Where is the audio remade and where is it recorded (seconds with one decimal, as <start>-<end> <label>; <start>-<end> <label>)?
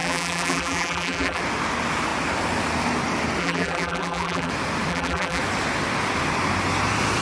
0.0-1.4 remade; 1.4-3.4 recorded; 3.4-4.5 remade; 4.5-4.9 recorded; 4.9-5.4 remade; 5.4-7.2 recorded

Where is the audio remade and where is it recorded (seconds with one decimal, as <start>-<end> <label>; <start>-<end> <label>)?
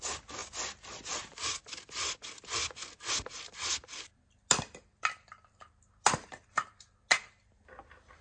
0.0-8.2 recorded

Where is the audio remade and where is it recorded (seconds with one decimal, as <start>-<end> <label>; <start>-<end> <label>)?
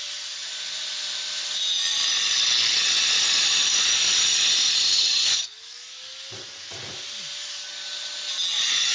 0.0-0.4 recorded; 0.4-1.6 remade; 1.6-2.1 recorded; 2.1-4.8 remade; 4.8-8.9 recorded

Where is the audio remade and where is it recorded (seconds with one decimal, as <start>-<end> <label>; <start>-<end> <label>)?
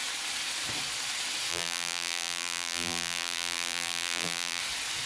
0.0-1.5 recorded; 1.5-4.6 remade; 4.6-5.1 recorded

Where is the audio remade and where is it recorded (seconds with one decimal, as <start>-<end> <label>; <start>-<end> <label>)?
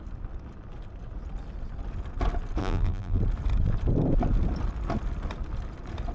0.0-2.6 recorded; 2.6-3.2 remade; 3.2-6.1 recorded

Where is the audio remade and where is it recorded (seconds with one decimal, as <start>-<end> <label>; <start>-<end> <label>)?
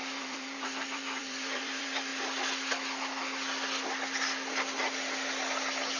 0.0-2.1 remade; 2.1-6.0 recorded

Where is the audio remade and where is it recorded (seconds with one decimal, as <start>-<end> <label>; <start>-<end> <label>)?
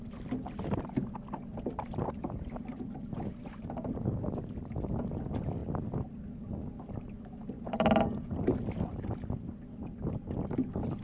0.0-1.5 recorded; 1.5-4.3 remade; 4.3-11.0 recorded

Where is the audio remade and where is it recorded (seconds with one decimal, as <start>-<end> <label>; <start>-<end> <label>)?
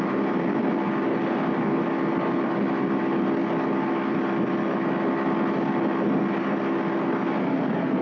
0.0-8.0 recorded